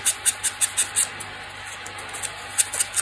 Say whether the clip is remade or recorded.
recorded